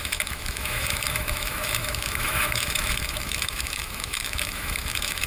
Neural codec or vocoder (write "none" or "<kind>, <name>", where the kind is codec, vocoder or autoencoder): autoencoder, DAC-VAE